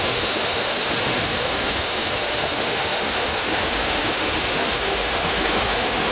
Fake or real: fake